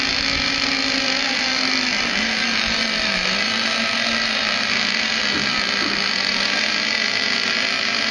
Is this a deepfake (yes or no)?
no